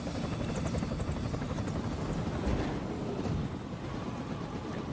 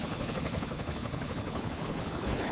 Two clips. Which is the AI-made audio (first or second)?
second